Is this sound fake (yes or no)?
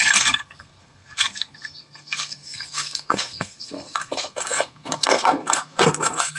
yes